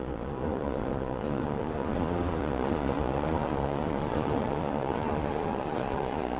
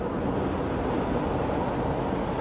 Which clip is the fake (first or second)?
first